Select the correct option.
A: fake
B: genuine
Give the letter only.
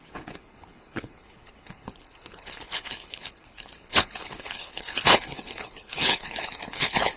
A